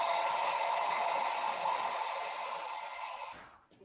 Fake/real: real